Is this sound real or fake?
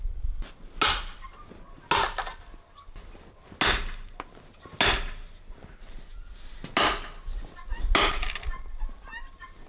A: real